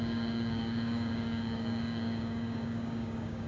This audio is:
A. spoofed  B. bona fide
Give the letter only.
A